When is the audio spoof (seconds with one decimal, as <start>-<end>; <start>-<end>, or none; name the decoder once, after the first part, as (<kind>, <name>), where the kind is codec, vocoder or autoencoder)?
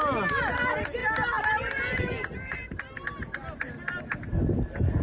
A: none